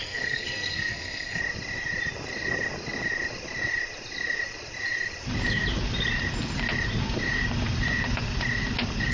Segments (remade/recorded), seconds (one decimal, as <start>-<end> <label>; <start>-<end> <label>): 0.0-1.4 remade; 1.4-9.1 recorded